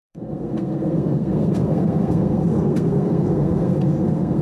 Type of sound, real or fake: fake